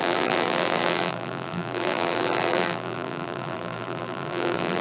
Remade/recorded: remade